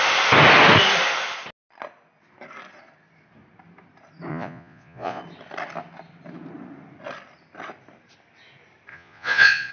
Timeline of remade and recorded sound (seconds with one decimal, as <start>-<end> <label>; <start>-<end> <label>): 0.0-4.3 recorded; 4.3-5.2 remade; 5.2-8.9 recorded; 8.9-9.7 remade